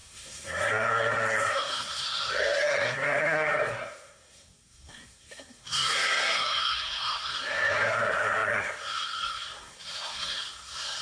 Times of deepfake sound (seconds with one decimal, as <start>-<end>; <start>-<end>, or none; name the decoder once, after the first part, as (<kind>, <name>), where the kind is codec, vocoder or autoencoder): 0.0-11.0 (codec, SNAC)